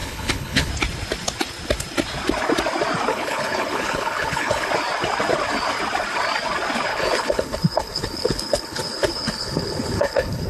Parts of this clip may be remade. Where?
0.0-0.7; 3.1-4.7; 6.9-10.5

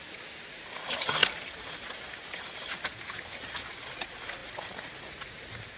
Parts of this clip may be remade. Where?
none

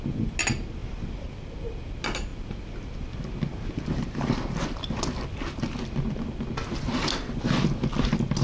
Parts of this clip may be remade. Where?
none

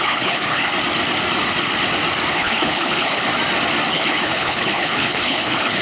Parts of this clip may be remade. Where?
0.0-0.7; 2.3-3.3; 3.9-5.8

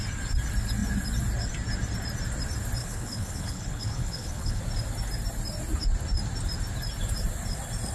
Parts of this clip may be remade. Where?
2.8-4.6

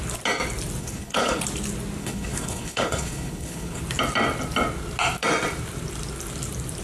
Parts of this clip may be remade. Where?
0.8-1.4; 2.0-3.8

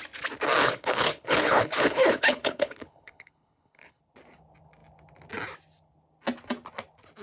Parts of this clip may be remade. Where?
0.6-4.0

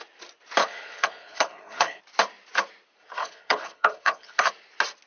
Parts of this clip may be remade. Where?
0.6-2.0; 3.2-4.5